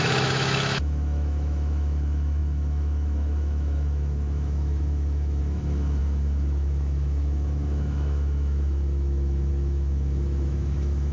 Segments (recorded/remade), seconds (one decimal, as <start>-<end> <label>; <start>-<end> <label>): 0.0-11.1 remade